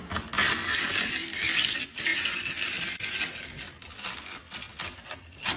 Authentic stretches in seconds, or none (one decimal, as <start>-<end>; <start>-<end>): 0.0-5.6